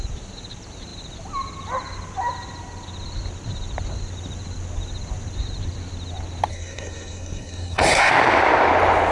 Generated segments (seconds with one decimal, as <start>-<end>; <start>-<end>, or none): 6.5-8.1